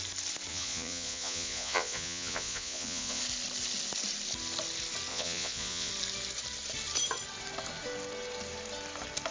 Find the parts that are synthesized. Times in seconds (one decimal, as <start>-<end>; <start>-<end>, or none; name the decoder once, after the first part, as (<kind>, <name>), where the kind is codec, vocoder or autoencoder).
0.5-3.2 (vocoder, Vocos); 5.1-5.9